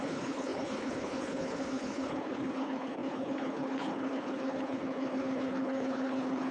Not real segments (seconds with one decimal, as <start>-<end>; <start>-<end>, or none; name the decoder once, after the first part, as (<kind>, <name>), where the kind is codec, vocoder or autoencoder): 0.0-6.5 (codec, HILCodec)

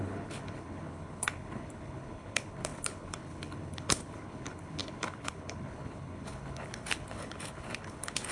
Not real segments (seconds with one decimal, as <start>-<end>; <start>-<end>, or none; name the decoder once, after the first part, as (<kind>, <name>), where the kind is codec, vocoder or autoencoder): 0.0-8.3 (codec, HILCodec)